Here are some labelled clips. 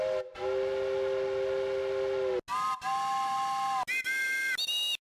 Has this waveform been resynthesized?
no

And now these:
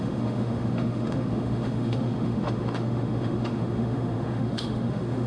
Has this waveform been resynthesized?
yes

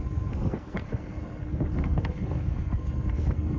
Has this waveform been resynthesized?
yes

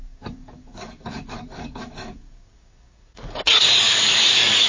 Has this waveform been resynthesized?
yes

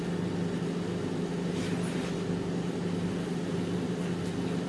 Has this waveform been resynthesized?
no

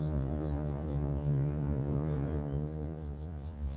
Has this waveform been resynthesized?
yes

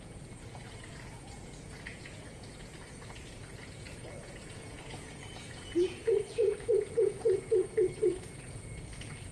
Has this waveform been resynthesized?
yes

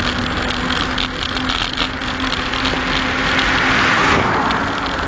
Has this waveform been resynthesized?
no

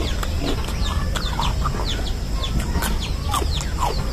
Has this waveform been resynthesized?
no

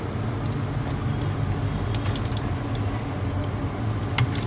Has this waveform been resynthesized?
no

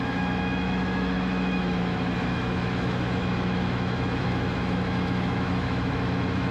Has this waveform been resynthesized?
yes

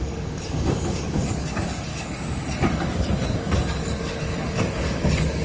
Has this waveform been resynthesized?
yes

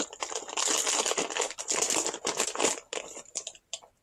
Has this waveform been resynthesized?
no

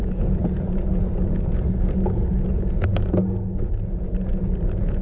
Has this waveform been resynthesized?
yes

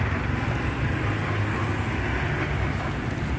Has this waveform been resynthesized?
no